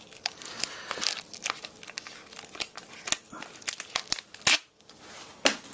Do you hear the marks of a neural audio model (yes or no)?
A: no